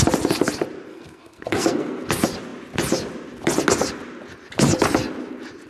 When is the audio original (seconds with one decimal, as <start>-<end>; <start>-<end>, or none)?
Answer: 0.0-0.9; 2.0-5.7